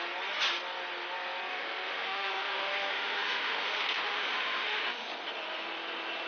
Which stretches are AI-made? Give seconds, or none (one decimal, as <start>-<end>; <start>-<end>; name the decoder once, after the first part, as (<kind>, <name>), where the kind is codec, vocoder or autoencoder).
1.5-5.1 (autoencoder, DAC-VAE)